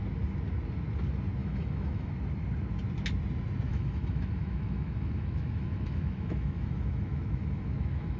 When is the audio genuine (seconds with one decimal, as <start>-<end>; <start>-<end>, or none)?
0.0-1.4; 2.1-3.7